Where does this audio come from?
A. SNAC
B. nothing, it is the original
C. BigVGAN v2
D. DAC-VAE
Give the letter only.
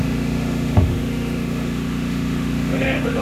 D